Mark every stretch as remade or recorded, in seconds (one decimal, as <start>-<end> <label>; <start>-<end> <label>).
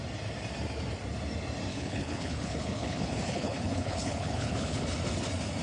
0.0-1.7 recorded; 1.7-4.8 remade; 4.8-5.6 recorded